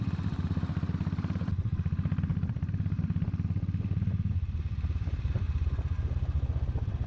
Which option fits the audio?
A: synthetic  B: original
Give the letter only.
A